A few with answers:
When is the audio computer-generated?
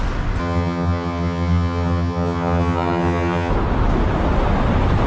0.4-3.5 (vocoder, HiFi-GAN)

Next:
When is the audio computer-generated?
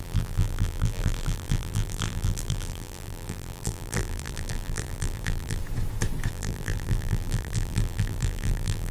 0.0-5.6 (vocoder, BigVGAN v2); 6.3-8.9